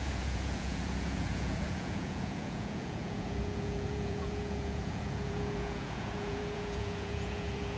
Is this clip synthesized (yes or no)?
yes